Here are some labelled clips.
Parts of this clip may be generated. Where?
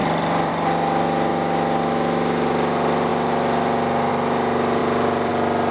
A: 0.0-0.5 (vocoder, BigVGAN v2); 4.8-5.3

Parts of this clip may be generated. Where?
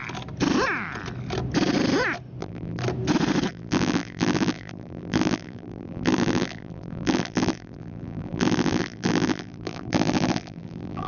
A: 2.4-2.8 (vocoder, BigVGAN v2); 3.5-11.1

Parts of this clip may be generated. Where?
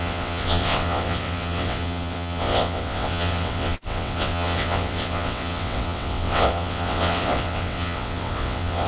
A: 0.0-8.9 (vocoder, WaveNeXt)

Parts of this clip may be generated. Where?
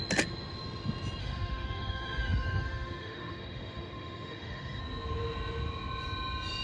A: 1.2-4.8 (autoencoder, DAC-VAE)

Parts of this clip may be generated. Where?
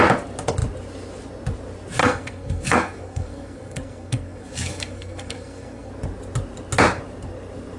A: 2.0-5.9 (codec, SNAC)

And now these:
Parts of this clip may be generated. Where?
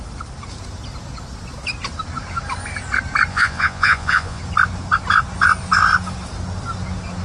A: 3.3-4.4 (vocoder, Vocos)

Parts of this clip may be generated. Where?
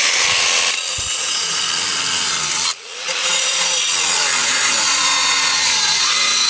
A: 0.9-1.6 (vocoder, Vocos); 3.2-3.9; 4.4-6.5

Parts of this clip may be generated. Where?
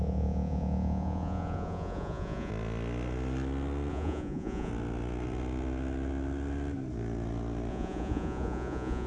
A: 0.0-2.5 (vocoder, Vocos); 3.9-4.7; 7.7-9.1